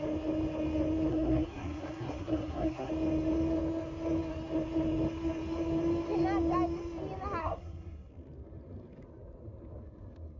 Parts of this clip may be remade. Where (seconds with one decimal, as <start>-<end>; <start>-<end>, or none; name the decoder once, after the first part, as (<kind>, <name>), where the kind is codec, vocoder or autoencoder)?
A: 1.1-2.9 (codec, SNAC); 7.4-8.1